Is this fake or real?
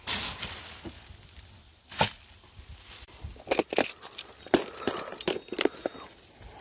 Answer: real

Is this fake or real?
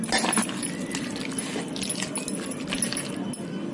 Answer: real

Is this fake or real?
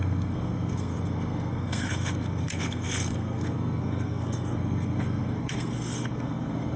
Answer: fake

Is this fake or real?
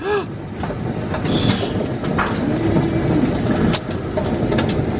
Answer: real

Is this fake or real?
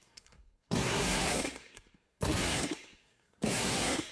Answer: fake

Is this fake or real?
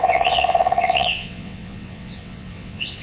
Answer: fake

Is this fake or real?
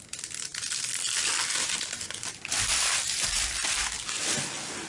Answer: real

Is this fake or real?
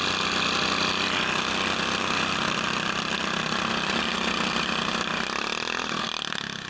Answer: real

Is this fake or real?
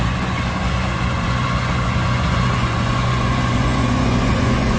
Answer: fake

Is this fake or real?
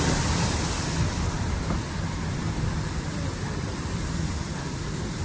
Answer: real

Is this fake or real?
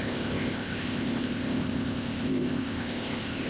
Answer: fake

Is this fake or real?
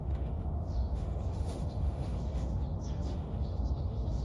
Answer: fake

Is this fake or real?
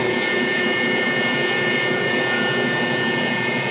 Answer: fake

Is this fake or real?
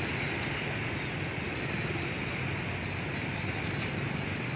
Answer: real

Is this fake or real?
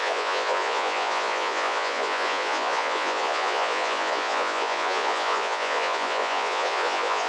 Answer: fake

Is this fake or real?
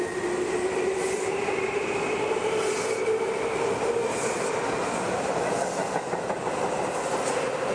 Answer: real